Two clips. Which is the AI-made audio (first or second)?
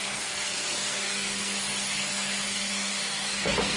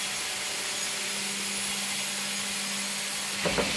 first